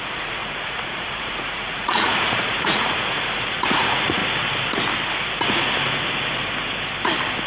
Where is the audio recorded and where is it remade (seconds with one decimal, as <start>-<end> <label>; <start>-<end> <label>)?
0.0-4.2 remade; 4.2-7.5 recorded